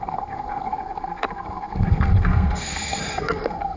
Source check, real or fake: fake